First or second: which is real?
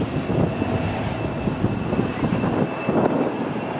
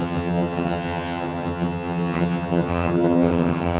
first